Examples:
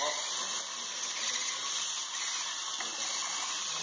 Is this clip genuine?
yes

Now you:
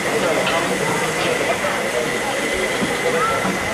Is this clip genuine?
yes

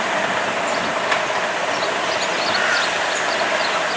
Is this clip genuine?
yes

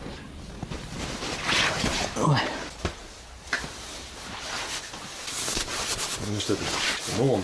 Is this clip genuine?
yes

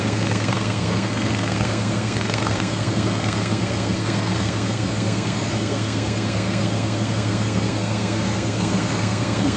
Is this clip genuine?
no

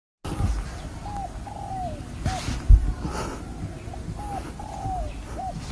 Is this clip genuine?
yes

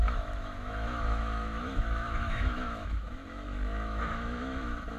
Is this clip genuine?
no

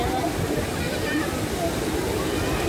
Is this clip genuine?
yes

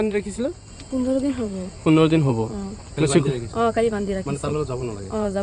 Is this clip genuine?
no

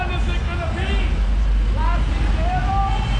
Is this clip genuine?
yes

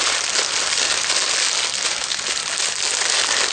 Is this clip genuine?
yes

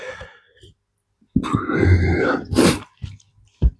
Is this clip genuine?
yes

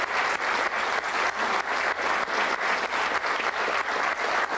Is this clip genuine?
no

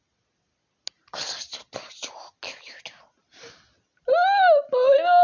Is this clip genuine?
yes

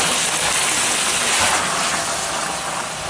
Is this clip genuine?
yes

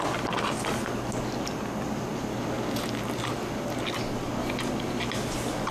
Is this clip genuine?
yes